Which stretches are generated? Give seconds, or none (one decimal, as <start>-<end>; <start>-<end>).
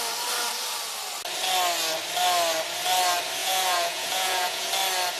3.4-4.7